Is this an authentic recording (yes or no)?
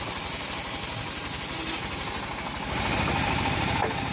yes